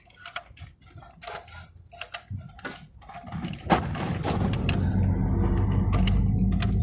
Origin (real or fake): real